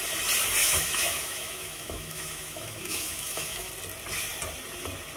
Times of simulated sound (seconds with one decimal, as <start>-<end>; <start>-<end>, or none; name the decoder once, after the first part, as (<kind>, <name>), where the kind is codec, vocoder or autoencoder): 0.6-3.7 (autoencoder, DAC-VAE)